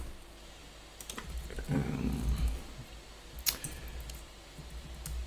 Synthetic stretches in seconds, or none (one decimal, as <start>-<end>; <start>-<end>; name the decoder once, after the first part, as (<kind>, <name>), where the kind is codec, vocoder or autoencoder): none

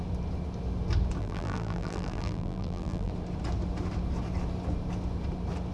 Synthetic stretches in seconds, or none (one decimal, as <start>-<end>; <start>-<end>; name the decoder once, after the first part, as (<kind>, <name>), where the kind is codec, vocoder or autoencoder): 1.2-3.1 (vocoder, BigVGAN v2)

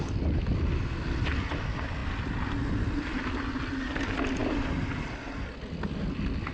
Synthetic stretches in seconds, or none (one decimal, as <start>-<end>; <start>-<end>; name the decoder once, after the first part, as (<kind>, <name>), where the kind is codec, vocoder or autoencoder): none

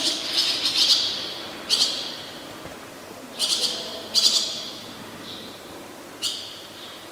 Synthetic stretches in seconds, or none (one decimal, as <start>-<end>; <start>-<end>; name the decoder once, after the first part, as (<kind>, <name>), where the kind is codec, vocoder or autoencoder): 0.0-7.1 (vocoder, BigVGAN v2)

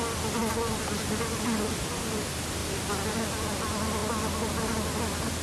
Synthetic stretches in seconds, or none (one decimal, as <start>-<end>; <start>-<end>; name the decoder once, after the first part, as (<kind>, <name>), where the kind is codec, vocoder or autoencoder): 2.6-3.1 (vocoder, BigVGAN v2); 4.0-4.6